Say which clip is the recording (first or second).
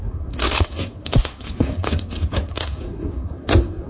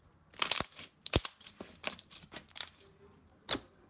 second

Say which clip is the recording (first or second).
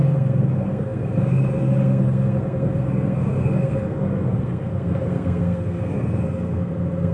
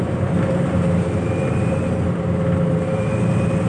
second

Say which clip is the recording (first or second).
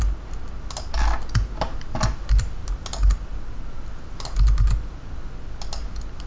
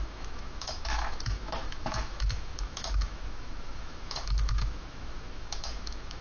first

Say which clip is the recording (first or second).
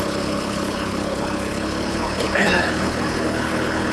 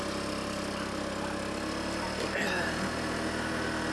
second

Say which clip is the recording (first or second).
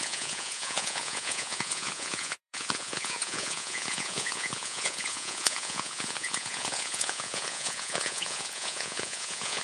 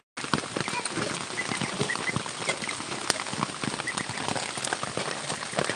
second